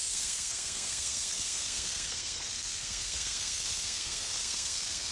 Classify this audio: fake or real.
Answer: fake